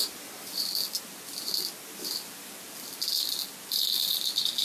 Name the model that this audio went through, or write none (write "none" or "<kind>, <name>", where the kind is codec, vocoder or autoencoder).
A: none